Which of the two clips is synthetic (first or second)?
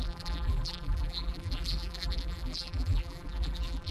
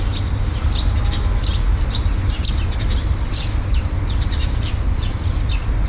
first